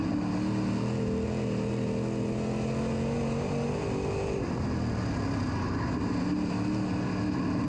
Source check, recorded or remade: recorded